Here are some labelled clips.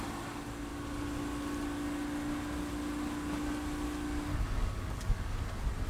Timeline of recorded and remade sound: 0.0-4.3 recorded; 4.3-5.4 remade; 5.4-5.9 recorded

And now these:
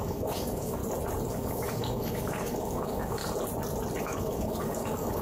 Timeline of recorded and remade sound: 0.0-0.8 remade; 0.8-1.3 recorded; 1.3-3.2 remade; 3.2-4.0 recorded; 4.0-5.2 remade

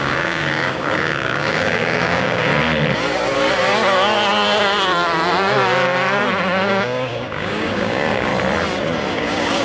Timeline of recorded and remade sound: 0.0-2.5 remade; 2.5-6.7 recorded; 6.7-8.3 remade; 8.3-9.1 recorded; 9.1-9.6 remade

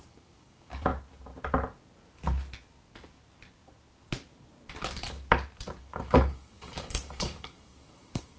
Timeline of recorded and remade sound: 0.0-0.9 remade; 0.9-5.8 recorded; 5.8-8.4 remade

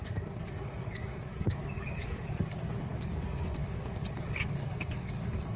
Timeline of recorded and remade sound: 0.0-5.6 remade

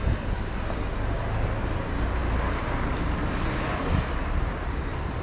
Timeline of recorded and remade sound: 0.0-5.2 recorded

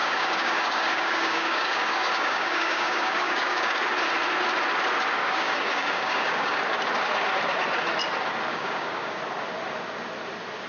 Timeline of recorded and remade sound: 0.0-3.8 remade; 3.8-5.2 recorded; 5.2-6.6 remade; 6.6-8.5 recorded; 8.5-9.2 remade; 9.2-10.7 recorded